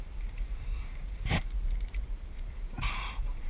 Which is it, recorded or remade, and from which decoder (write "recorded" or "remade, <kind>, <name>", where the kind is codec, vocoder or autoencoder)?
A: remade, vocoder, BigVGAN v2